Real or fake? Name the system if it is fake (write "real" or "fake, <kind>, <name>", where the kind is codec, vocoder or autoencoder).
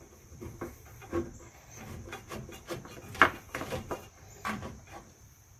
fake, vocoder, BigVGAN v2